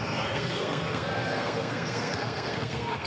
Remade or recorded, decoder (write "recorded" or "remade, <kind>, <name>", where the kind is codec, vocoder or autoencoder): remade, codec, SNAC